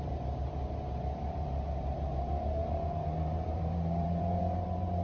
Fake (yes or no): yes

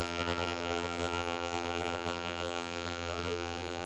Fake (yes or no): yes